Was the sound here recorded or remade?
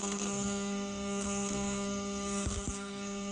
remade